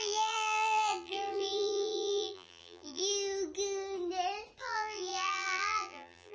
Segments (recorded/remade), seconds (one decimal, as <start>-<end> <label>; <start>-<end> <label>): 0.0-3.0 remade; 3.0-4.6 recorded; 4.6-6.3 remade